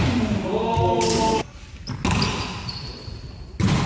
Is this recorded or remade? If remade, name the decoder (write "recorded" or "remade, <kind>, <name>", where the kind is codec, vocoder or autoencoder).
recorded